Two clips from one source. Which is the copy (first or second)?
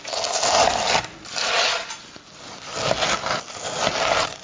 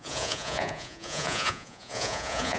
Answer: second